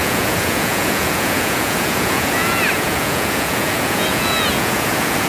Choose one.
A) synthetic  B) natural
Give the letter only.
A